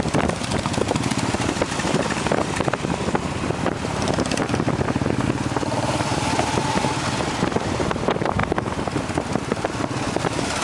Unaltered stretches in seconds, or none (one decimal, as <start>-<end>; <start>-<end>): 8.4-10.2